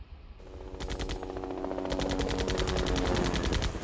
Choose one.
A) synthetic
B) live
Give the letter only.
B